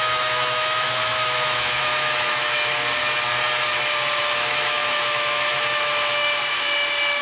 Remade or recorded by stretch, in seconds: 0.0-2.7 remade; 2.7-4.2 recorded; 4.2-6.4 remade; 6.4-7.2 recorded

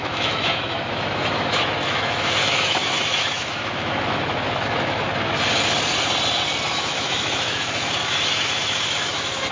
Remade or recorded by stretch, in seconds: 0.0-5.1 remade; 5.1-6.7 recorded; 6.7-9.5 remade